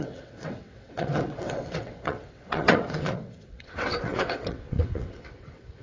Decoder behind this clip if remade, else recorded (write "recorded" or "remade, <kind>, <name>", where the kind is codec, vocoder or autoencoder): remade, vocoder, WaveNeXt